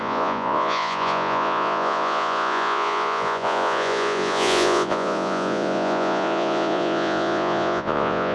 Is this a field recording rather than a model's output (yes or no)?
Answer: no